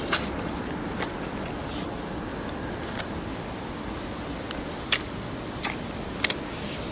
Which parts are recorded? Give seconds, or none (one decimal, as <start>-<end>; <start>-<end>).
0.0-6.9